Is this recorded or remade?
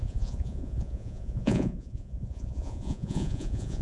remade